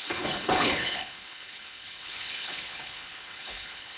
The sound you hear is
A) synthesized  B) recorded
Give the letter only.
A